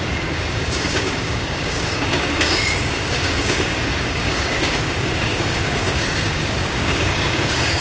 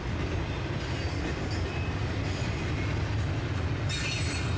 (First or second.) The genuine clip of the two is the second